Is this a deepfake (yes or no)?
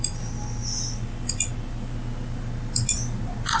no